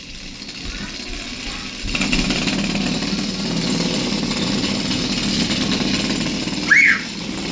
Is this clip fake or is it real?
real